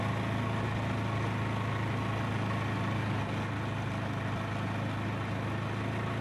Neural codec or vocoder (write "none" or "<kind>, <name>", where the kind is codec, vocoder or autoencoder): none